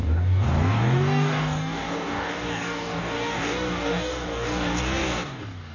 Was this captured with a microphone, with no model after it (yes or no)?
no